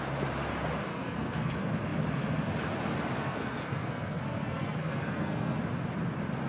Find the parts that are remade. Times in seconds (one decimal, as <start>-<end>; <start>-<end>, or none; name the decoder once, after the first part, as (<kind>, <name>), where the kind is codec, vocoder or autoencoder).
0.9-1.5 (codec, SNAC); 3.2-5.6